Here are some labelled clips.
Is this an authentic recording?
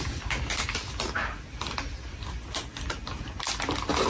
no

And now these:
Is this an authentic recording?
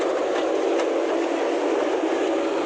yes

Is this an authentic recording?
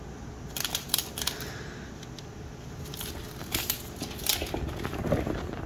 yes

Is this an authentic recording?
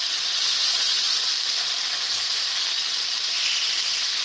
yes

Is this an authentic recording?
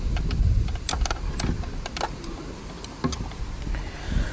yes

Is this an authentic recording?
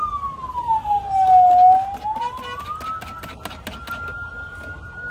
yes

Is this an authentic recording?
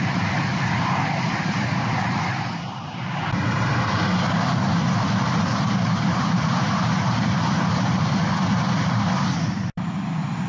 no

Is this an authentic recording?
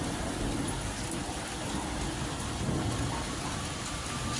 yes